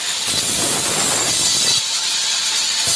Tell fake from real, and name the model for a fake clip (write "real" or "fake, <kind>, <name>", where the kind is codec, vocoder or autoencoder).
real